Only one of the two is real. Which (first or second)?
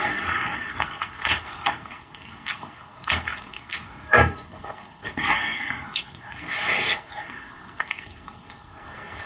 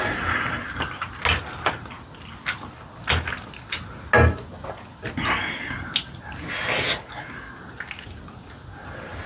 second